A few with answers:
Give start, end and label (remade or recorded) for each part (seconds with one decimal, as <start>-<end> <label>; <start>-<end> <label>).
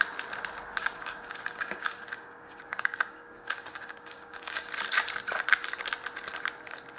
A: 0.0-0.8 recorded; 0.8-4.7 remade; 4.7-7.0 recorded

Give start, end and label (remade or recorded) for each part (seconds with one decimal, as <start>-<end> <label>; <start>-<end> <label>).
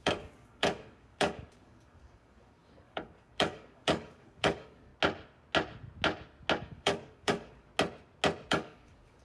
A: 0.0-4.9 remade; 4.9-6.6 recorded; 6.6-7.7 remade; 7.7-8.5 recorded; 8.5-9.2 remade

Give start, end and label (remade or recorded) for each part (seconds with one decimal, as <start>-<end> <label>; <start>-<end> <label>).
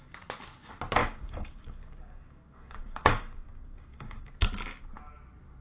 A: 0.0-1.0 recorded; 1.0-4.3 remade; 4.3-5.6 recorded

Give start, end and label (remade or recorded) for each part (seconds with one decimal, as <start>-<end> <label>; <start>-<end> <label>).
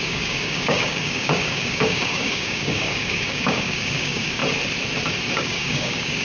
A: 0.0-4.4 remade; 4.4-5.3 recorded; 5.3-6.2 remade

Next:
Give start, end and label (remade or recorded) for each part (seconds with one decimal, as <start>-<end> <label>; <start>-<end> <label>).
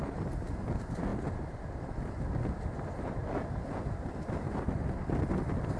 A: 0.0-5.8 recorded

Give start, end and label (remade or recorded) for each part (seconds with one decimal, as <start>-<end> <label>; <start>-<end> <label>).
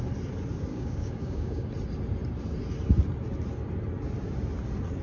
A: 0.0-0.7 recorded; 0.7-1.7 remade; 1.7-5.0 recorded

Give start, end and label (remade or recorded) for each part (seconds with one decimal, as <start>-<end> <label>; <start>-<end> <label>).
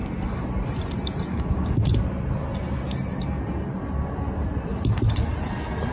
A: 0.0-1.3 recorded; 1.3-1.8 remade; 1.8-5.9 recorded